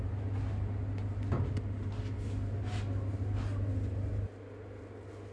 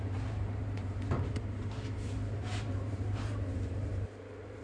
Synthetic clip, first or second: second